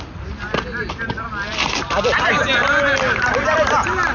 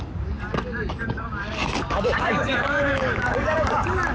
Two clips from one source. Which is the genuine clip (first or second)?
first